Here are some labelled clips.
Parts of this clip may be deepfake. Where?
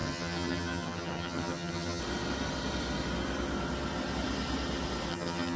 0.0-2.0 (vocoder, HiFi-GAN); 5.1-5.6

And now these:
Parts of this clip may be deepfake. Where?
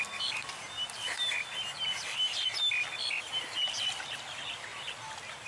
none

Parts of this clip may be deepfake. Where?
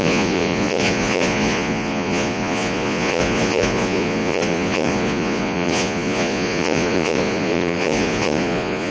0.0-8.9 (vocoder, Vocos)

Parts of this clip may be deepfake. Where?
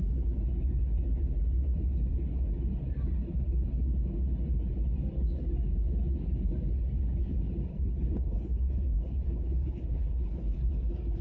7.7-10.7 (codec, HILCodec)